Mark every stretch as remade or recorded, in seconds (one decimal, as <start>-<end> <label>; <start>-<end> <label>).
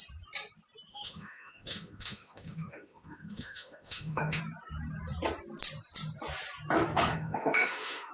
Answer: 0.0-0.9 recorded; 0.9-4.4 remade; 4.4-6.9 recorded; 6.9-8.1 remade